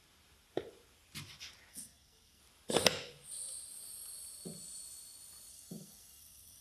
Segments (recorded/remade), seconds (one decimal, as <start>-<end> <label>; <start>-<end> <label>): 0.0-1.7 recorded; 1.7-2.4 remade; 2.4-5.5 recorded; 5.5-6.6 remade